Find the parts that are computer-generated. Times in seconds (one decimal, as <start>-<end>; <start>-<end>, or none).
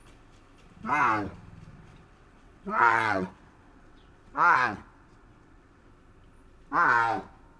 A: 1.7-5.9